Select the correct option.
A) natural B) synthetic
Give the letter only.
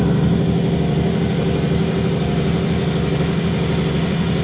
A